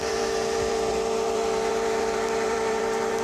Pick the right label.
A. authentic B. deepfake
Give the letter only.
B